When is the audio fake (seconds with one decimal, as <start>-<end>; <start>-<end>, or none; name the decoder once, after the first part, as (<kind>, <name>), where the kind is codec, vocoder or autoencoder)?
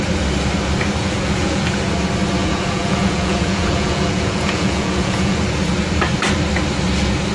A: 1.0-1.6 (vocoder, Vocos); 2.4-5.4